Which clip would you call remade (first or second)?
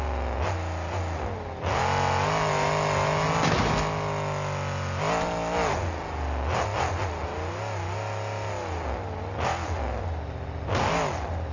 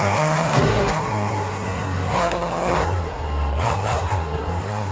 second